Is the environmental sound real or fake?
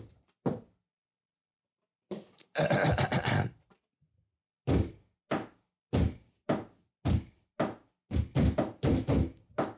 real